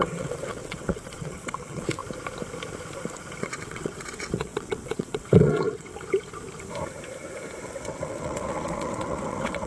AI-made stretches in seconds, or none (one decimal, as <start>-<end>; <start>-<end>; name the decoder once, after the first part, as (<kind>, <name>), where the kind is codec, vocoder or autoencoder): 0.0-2.0 (vocoder, WaveNeXt); 3.4-5.9; 7.6-9.7